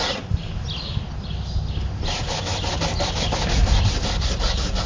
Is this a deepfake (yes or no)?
no